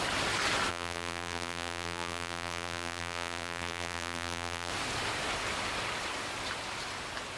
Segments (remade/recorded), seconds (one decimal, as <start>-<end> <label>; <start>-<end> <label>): 0.0-0.7 recorded; 0.7-4.7 remade; 4.7-7.4 recorded